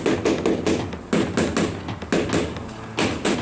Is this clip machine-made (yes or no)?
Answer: no